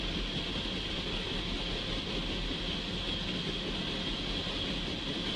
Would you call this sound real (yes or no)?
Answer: yes